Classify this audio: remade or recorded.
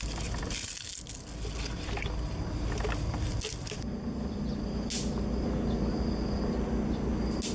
recorded